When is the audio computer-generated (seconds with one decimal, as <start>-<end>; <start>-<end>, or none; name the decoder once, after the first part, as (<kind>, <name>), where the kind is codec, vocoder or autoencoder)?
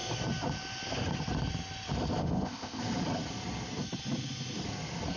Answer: 2.2-2.8 (codec, ZipCodec)